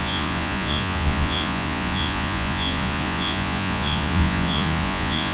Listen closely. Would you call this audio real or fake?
fake